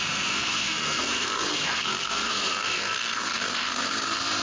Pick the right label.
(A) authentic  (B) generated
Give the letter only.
B